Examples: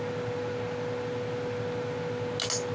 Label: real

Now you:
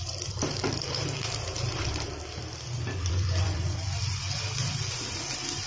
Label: fake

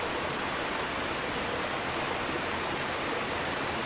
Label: real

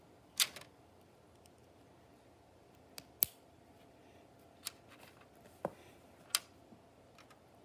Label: real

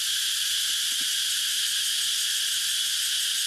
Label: real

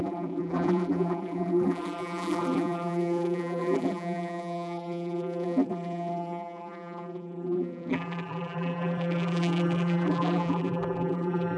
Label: fake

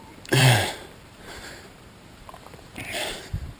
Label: fake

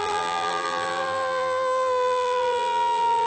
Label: fake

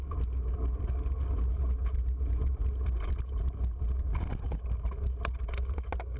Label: real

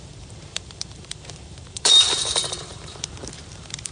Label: fake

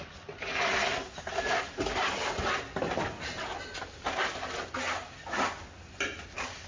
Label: real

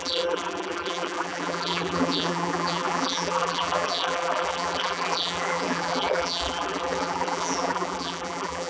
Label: fake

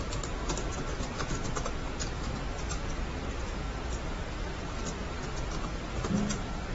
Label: real